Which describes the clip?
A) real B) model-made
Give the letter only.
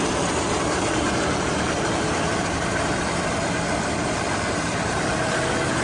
B